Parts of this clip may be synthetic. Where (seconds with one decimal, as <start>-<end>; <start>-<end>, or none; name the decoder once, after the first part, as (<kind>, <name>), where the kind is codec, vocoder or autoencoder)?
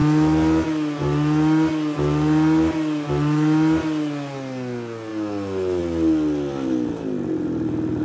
none